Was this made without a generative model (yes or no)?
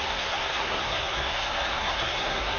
no